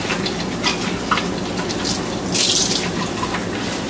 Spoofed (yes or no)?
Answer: no